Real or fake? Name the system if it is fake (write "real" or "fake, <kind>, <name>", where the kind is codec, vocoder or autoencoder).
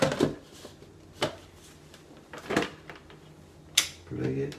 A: real